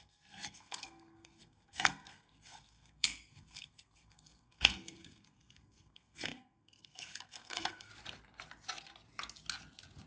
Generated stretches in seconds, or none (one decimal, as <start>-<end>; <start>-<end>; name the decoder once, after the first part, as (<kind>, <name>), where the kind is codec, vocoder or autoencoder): 0.0-7.9 (codec, SNAC)